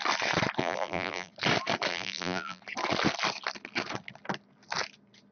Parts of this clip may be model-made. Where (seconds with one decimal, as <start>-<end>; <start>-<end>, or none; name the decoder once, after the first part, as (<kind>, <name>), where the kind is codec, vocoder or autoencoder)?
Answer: 0.6-1.3 (vocoder, BigVGAN v2); 1.9-2.6